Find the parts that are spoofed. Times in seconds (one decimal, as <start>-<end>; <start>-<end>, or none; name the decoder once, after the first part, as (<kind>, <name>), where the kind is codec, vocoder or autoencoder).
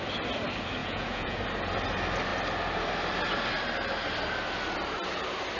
0.8-1.4 (vocoder, Vocos)